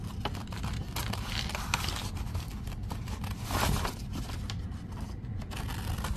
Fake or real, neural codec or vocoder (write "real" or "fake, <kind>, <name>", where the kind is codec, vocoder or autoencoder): real